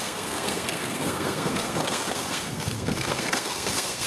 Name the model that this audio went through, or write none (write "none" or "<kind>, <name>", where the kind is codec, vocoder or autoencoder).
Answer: codec, SNAC